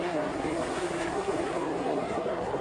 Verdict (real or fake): fake